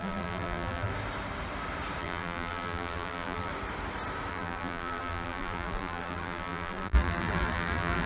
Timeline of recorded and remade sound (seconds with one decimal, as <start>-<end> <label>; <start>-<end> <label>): 0.0-0.9 remade; 0.9-2.0 recorded; 2.0-3.5 remade; 3.5-4.3 recorded; 4.3-8.1 remade